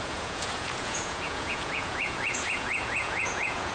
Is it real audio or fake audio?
fake